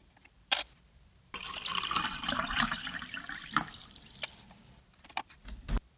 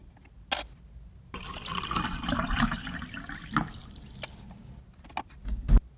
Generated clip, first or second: first